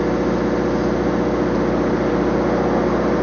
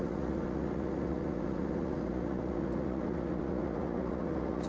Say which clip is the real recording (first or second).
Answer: first